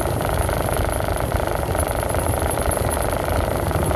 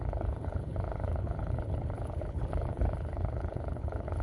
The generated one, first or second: second